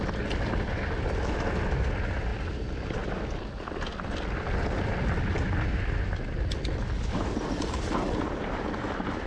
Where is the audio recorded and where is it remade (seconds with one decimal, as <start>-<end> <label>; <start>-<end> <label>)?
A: 0.0-9.3 recorded

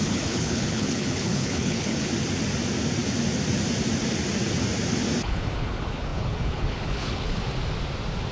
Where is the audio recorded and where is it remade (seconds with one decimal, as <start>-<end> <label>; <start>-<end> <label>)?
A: 0.0-2.1 remade; 2.1-5.2 recorded; 5.2-7.4 remade; 7.4-8.3 recorded